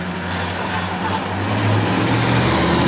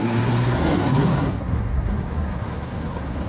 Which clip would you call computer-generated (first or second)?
second